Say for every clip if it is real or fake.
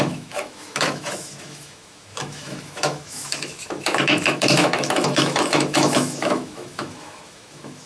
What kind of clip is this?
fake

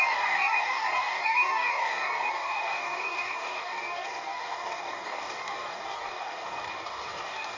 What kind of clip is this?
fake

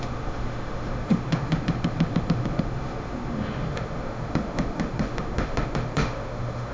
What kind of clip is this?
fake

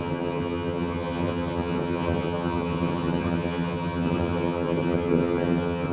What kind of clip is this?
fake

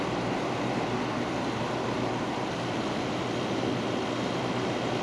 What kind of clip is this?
real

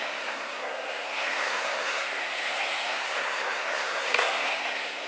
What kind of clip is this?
fake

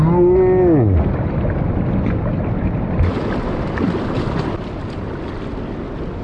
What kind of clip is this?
real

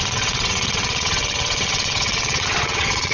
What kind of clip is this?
fake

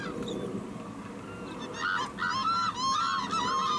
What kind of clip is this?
real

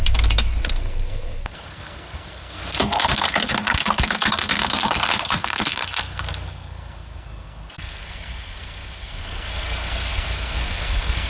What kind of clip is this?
fake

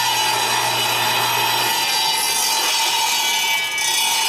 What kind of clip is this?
real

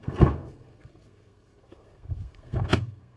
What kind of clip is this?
fake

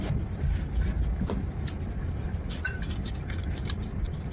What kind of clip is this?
real